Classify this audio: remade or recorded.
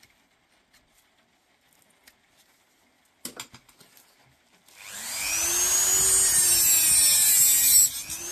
recorded